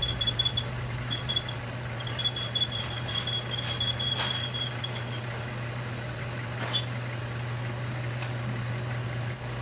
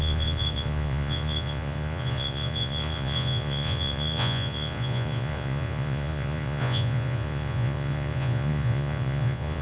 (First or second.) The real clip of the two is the first